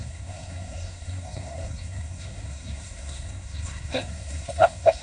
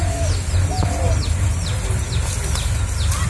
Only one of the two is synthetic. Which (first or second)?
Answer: first